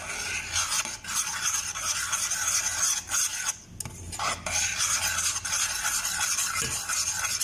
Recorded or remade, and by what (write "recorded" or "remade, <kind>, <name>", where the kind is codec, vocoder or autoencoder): recorded